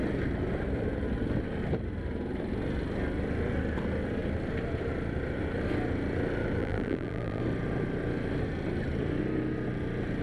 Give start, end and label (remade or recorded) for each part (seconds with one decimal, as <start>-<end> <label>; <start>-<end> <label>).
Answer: 0.0-6.6 recorded; 6.6-7.4 remade; 7.4-10.2 recorded